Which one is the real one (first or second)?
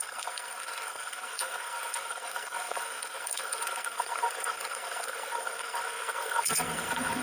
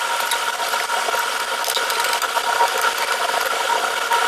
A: second